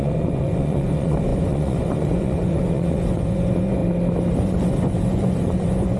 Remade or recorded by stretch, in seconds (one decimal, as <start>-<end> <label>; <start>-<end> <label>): 0.0-3.8 remade; 3.8-4.4 recorded; 4.4-6.0 remade